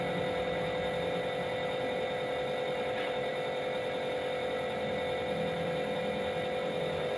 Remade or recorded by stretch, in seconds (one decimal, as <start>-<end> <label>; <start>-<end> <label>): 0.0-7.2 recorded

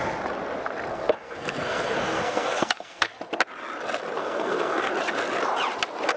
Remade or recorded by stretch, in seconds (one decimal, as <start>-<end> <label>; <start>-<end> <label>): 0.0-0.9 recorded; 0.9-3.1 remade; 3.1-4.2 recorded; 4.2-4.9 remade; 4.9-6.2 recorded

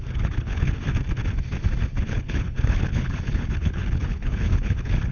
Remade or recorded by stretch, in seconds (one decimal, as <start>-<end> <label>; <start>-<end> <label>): 0.0-0.8 remade; 0.8-1.9 recorded; 1.9-5.1 remade